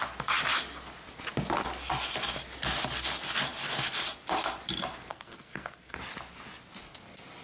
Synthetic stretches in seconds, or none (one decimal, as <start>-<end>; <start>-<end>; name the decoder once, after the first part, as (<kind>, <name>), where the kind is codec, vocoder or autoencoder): 5.1-6.0 (codec, SNAC)